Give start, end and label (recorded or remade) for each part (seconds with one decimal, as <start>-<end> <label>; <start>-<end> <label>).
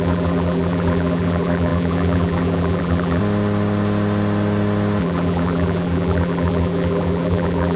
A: 0.0-3.2 remade; 3.2-5.0 recorded; 5.0-7.8 remade